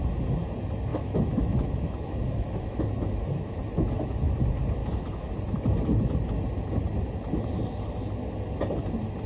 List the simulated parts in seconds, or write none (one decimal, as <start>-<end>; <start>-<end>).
0.9-4.3; 4.8-5.3